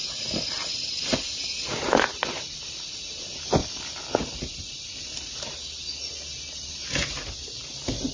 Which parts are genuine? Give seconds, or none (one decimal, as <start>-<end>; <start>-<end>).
0.0-3.6; 6.7-8.1